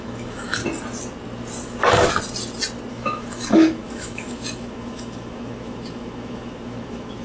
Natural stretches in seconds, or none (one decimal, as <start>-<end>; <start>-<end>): 0.6-2.9